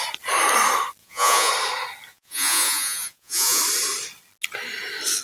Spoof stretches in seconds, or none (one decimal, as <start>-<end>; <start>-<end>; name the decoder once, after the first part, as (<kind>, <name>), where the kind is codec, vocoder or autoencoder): 1.0-1.5 (vocoder, Vocos); 2.1-3.6